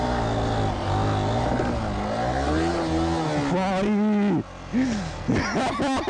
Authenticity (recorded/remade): recorded